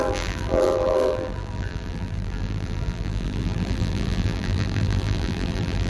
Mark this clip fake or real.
fake